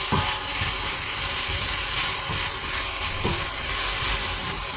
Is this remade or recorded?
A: recorded